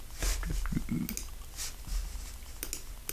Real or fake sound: real